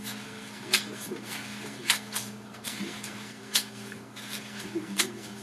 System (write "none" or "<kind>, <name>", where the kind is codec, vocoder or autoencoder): codec, SNAC